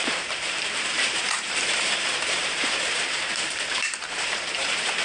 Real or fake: fake